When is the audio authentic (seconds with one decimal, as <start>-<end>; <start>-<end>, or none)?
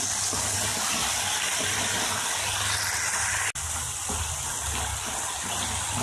0.0-6.0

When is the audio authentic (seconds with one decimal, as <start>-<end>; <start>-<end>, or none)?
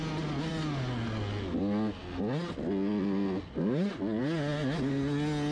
0.0-5.5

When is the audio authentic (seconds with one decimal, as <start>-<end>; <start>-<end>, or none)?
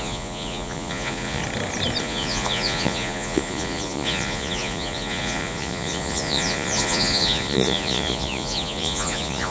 1.4-2.0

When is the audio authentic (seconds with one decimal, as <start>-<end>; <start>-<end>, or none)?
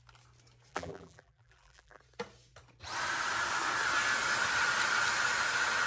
0.0-0.7; 2.0-5.9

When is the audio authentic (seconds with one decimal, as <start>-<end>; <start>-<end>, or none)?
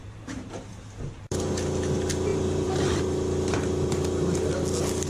1.5-2.3; 3.0-5.1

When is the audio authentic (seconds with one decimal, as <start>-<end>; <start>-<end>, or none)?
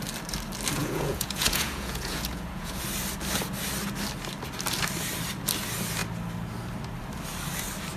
0.0-0.8; 2.8-8.0